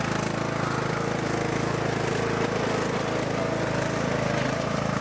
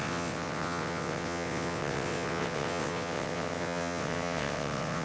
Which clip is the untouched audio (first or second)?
first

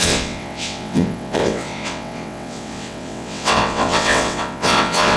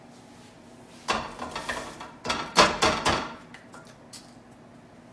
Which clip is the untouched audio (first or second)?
second